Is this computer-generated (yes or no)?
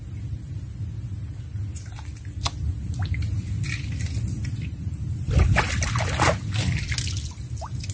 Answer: no